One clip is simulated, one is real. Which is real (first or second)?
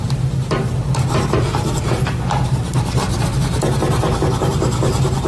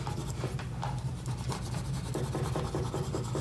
second